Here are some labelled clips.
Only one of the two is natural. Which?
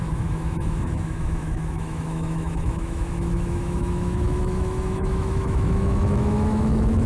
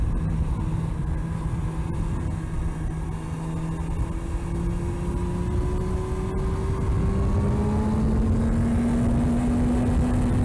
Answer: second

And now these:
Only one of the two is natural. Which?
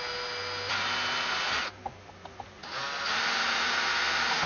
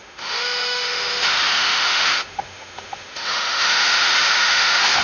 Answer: first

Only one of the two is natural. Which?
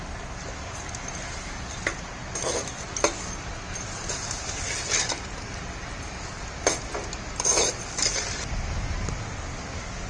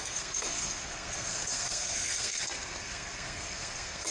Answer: first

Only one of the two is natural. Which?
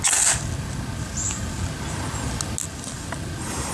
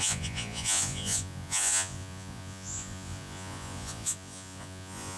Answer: first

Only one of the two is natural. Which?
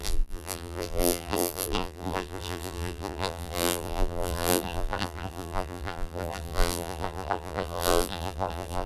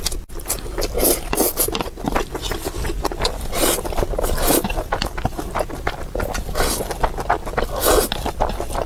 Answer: second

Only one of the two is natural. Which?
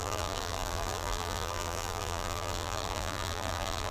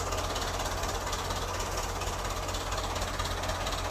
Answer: second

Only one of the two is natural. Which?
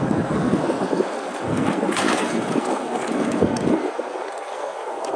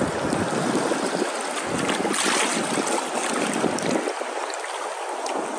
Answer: second